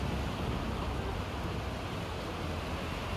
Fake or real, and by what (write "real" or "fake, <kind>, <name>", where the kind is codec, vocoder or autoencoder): real